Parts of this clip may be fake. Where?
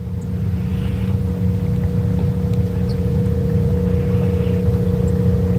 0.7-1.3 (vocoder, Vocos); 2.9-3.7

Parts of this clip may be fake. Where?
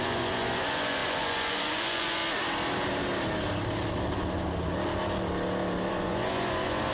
0.0-2.2 (vocoder, Vocos); 5.9-6.9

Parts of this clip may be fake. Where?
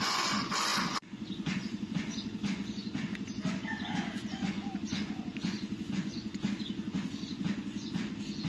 0.0-8.5 (vocoder, Vocos)